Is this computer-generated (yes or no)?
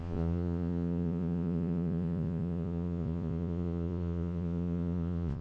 yes